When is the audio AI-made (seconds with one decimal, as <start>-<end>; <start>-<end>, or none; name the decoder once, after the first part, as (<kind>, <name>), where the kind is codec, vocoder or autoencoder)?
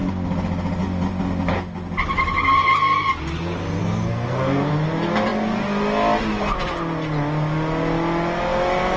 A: 3.8-4.7 (codec, SNAC)